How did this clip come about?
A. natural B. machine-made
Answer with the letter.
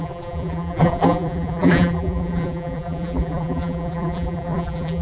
B